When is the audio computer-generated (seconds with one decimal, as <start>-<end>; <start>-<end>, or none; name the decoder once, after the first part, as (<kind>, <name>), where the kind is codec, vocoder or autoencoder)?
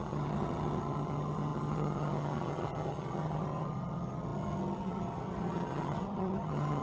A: 0.0-6.8 (vocoder, HiFi-GAN)